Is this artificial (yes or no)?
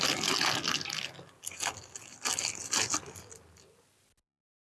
no